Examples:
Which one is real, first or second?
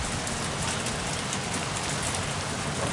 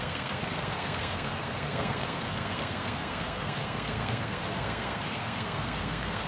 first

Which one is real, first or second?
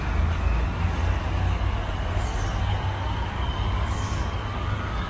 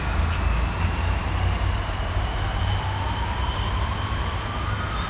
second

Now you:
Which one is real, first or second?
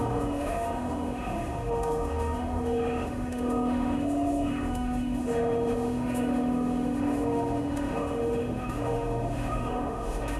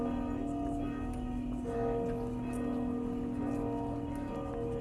second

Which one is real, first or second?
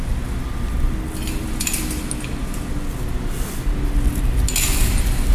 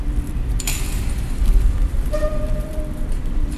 first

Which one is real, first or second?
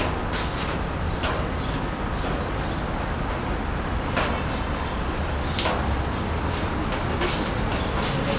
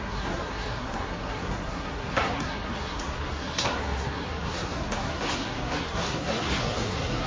first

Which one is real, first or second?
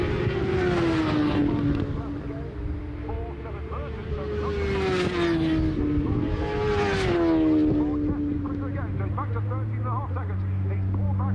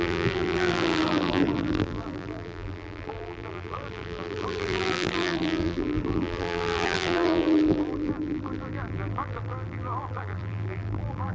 first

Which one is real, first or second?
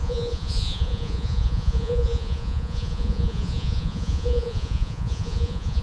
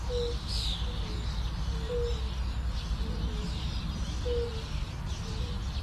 second